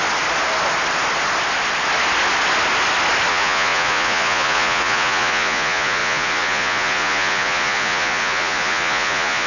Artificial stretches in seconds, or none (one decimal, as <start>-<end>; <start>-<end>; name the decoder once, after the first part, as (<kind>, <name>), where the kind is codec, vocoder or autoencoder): 3.3-9.5 (vocoder, Vocos)